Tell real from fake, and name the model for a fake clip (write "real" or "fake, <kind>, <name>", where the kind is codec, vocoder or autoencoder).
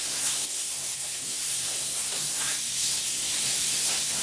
fake, codec, SNAC